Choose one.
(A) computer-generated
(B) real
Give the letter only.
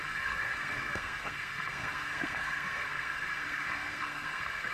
A